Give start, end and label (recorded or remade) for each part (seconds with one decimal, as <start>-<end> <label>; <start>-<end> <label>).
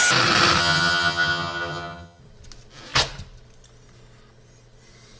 0.0-0.6 recorded; 0.6-2.2 remade; 2.2-5.2 recorded